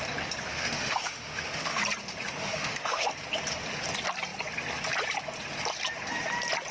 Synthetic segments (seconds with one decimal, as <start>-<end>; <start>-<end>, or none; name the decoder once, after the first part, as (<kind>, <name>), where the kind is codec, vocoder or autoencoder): 0.5-1.8 (autoencoder, DAC-VAE); 2.4-3.1

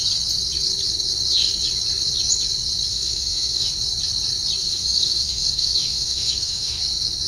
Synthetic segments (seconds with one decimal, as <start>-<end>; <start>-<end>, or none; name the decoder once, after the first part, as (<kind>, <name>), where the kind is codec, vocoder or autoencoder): 2.9-3.7 (autoencoder, DAC-VAE); 4.6-6.8